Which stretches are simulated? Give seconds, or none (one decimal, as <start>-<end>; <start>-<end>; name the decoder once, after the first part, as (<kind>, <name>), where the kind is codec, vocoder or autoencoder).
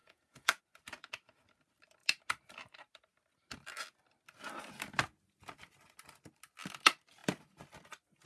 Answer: 0.0-0.6 (vocoder, Vocos)